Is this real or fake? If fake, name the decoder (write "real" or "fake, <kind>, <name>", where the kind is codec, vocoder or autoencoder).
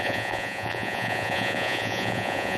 fake, vocoder, Vocos